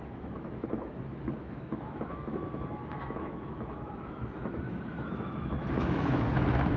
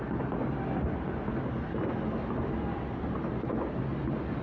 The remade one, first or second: first